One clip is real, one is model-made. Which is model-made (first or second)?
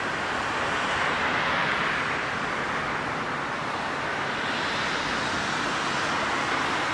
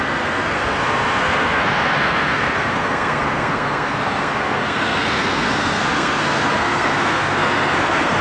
second